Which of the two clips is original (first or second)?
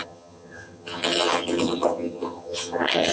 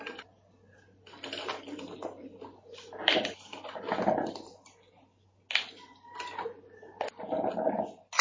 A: second